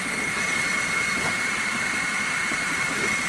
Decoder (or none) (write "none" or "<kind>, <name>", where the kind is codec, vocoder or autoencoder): none